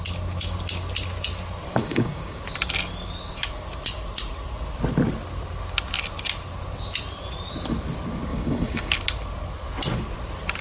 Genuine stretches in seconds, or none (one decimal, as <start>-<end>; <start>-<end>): 0.0-1.7; 2.4-8.3; 8.9-10.6